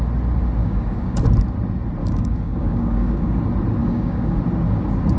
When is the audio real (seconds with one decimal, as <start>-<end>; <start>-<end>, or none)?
0.0-0.6; 1.2-2.0; 3.4-3.8; 4.4-5.2